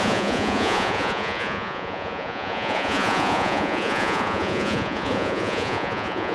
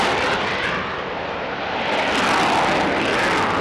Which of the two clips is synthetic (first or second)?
first